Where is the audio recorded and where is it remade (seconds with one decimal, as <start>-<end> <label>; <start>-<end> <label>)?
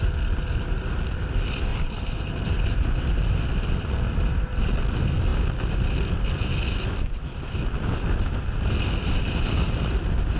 0.0-1.7 recorded; 1.7-2.8 remade; 2.8-10.4 recorded